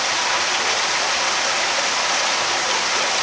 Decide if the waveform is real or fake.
real